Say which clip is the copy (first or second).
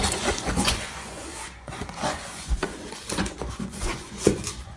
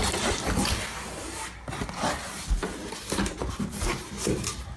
first